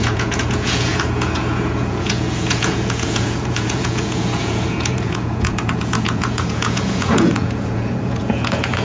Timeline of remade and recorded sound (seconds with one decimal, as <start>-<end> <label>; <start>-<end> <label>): 0.0-8.8 remade